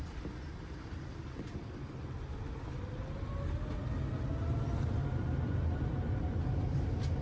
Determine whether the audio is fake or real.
real